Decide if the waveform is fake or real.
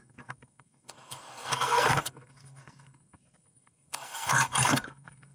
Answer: fake